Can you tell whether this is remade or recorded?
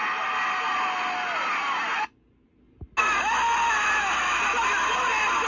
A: recorded